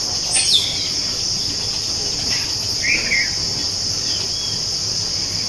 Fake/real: real